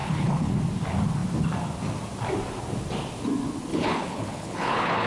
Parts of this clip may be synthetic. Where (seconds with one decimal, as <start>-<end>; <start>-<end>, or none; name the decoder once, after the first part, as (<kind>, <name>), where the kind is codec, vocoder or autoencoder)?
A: 0.0-0.5 (codec, HILCodec); 3.7-5.1

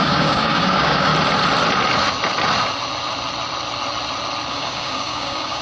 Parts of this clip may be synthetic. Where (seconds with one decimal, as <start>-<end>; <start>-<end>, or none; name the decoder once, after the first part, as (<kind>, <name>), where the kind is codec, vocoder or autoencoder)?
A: 0.0-1.1 (codec, DAC); 4.5-5.6

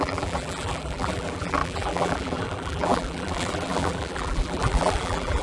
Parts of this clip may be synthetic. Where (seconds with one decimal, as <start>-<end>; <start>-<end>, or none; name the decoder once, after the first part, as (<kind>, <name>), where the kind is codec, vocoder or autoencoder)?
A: 0.0-5.4 (vocoder, BigVGAN v2)